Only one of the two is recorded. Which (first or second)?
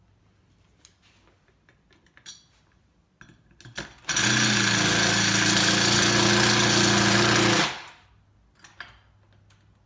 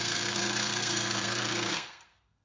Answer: first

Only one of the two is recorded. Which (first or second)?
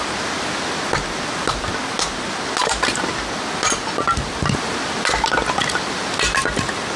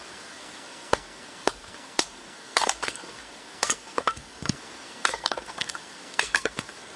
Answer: first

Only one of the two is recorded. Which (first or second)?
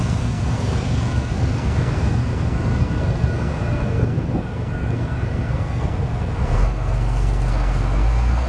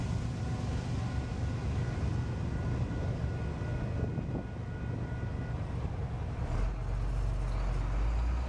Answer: second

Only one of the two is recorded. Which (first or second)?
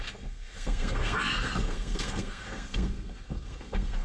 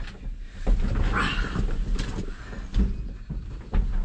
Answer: second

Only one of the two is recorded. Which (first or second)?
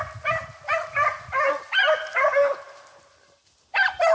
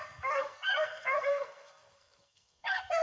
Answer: first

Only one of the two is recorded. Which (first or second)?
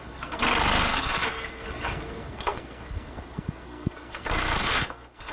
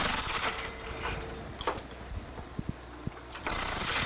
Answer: second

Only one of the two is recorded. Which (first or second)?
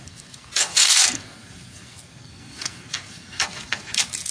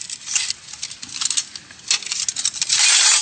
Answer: second